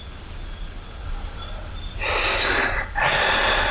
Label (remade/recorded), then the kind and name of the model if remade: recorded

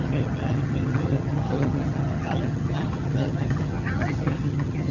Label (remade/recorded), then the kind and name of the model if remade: remade, vocoder, HiFi-GAN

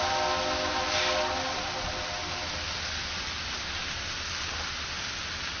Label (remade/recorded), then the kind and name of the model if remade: recorded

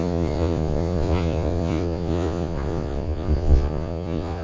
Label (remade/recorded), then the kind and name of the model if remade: remade, vocoder, Vocos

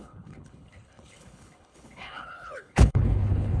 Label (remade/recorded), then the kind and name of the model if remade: remade, codec, HILCodec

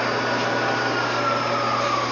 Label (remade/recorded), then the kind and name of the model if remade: recorded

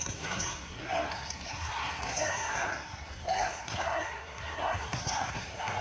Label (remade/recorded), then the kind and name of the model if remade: remade, codec, SNAC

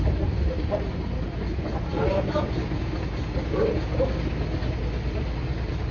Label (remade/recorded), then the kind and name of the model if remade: recorded